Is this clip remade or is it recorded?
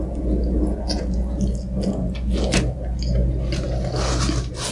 recorded